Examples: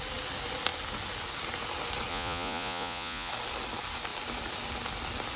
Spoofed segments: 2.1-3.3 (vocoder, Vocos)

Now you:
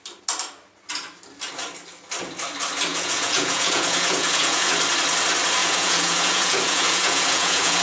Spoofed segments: 2.9-4.7 (vocoder, Vocos); 5.6-7.8